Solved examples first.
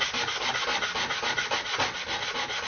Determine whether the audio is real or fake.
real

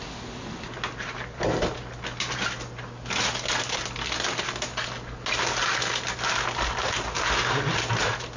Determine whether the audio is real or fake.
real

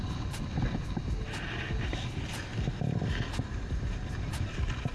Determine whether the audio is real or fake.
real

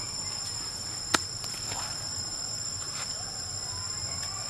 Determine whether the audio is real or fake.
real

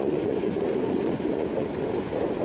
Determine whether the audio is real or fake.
fake